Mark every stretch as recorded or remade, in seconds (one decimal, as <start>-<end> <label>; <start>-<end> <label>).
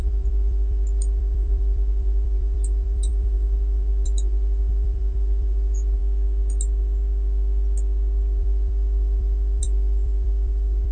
0.0-6.0 remade; 6.0-8.4 recorded; 8.4-10.9 remade